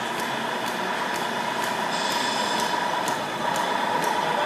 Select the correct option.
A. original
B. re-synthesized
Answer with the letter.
A